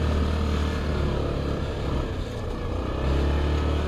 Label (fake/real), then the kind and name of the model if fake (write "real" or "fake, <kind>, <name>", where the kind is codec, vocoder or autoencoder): real